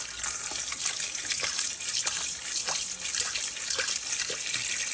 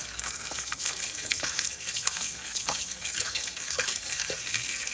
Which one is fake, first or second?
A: second